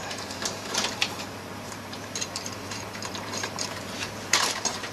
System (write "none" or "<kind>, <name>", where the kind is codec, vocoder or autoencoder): vocoder, BigVGAN v2